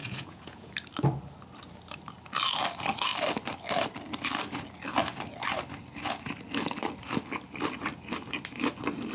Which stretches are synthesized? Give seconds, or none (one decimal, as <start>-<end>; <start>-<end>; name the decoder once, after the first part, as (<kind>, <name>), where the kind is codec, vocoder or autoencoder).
0.0-0.7 (vocoder, Vocos)